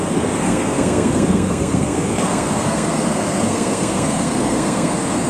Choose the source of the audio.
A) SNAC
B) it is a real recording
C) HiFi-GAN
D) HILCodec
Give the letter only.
A